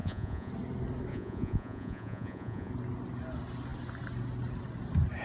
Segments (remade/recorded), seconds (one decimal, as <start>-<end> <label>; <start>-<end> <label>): 0.0-0.5 remade; 0.5-1.1 recorded; 1.1-2.7 remade; 2.7-5.2 recorded